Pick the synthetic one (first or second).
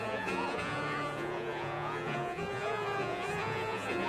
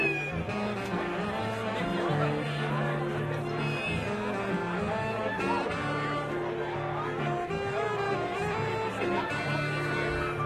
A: first